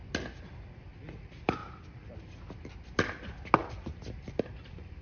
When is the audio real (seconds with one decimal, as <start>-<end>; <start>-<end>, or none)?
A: 0.0-1.2; 1.6-4.4